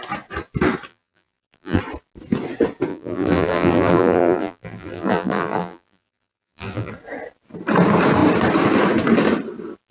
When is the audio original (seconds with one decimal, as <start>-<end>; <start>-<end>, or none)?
0.0-0.9; 1.8-2.9; 6.9-9.9